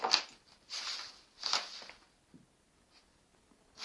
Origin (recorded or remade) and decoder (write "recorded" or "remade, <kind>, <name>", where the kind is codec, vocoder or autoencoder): recorded